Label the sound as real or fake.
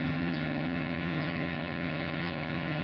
fake